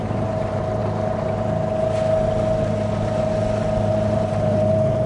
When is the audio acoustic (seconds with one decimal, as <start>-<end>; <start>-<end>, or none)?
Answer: 0.8-3.9

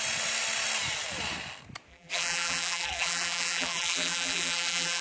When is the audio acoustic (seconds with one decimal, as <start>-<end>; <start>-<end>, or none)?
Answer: 0.0-1.9